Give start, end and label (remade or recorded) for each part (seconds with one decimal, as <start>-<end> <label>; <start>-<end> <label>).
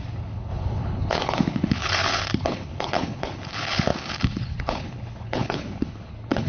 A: 0.0-6.5 remade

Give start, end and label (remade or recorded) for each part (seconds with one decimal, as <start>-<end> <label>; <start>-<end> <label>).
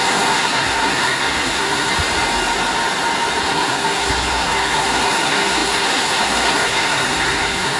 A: 0.0-1.9 remade; 1.9-3.4 recorded; 3.4-7.8 remade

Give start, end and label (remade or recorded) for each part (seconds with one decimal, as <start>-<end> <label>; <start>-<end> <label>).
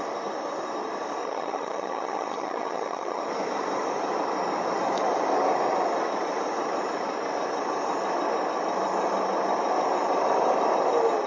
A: 0.0-1.2 recorded; 1.2-3.2 remade; 3.2-11.3 recorded